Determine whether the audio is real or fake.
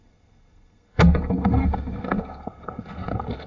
fake